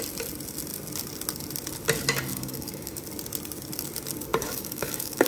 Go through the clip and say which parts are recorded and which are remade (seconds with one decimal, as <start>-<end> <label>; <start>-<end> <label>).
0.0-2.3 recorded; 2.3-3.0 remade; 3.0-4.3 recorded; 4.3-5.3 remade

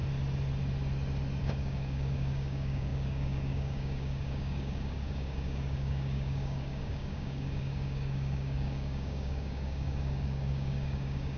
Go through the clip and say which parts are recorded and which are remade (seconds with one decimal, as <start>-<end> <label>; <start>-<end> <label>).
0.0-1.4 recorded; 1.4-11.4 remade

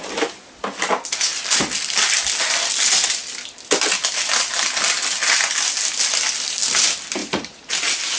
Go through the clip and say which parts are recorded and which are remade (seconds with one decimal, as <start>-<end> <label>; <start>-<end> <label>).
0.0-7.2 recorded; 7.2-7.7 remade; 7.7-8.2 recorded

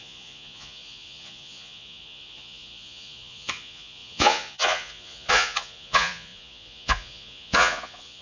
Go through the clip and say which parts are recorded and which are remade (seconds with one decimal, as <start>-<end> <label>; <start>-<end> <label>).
0.0-8.2 remade

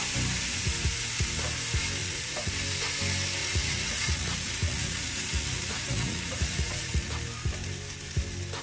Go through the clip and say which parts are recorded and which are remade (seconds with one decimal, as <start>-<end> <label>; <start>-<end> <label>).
0.0-2.0 recorded; 2.0-2.5 remade; 2.5-3.4 recorded; 3.4-7.1 remade; 7.1-8.6 recorded

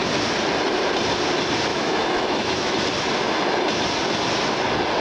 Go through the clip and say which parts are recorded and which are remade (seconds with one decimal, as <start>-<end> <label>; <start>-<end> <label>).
0.0-1.7 recorded; 1.7-2.7 remade; 2.7-5.0 recorded

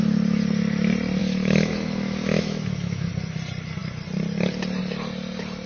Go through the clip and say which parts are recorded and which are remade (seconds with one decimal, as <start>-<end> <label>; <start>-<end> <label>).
0.0-1.2 recorded; 1.2-3.1 remade; 3.1-5.7 recorded

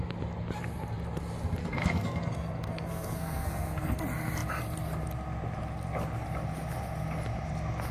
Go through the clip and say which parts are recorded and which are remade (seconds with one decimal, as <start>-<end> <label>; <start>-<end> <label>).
0.0-1.6 recorded; 1.6-4.0 remade; 4.0-7.9 recorded